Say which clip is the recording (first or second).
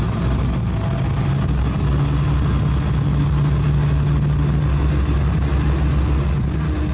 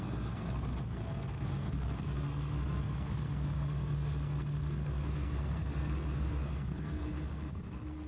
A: first